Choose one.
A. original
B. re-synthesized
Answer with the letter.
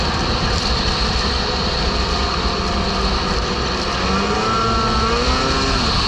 A